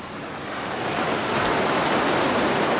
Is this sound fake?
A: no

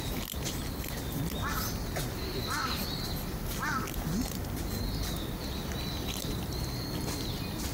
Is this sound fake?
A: no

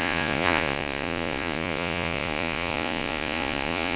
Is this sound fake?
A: yes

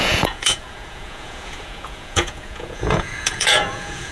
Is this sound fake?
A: yes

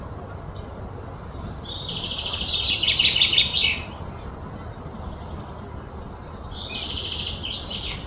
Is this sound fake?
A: no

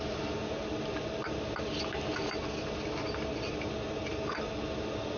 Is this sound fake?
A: no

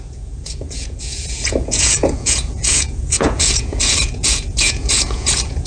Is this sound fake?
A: yes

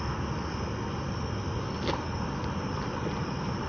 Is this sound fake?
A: no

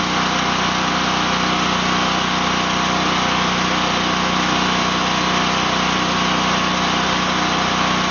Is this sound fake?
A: no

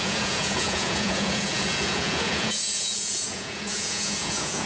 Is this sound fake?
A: yes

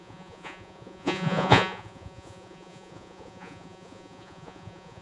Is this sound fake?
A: yes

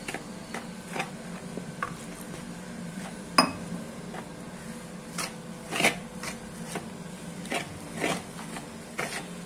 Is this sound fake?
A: no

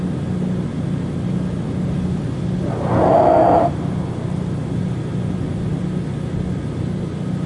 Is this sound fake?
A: no